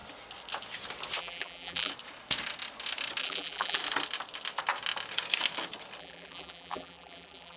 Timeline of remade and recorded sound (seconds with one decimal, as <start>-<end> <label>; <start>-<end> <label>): 0.0-1.2 recorded; 1.2-1.9 remade; 1.9-3.2 recorded; 3.2-3.8 remade; 3.8-6.0 recorded; 6.0-7.6 remade